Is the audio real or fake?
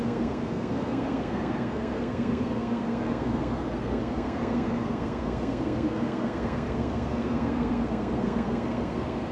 fake